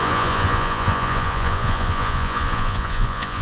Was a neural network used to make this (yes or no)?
yes